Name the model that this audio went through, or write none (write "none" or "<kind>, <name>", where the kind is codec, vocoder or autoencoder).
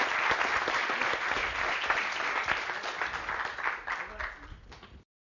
none